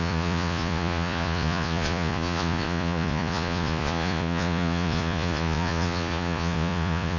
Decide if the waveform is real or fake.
fake